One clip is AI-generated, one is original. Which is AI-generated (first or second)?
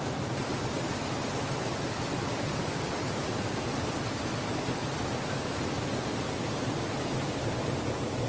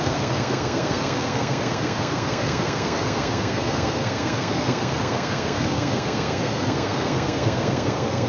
second